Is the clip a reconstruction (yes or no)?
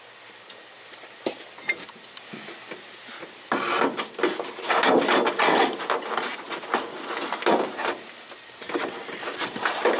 no